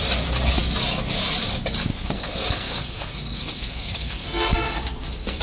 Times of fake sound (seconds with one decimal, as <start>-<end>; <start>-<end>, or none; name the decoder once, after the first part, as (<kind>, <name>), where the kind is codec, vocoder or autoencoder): 1.9-5.4 (codec, SNAC)